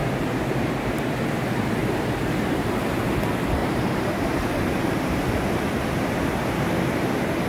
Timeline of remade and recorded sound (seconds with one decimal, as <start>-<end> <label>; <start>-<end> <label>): 0.0-0.7 remade; 0.7-1.8 recorded; 1.8-3.0 remade; 3.0-3.6 recorded; 3.6-7.5 remade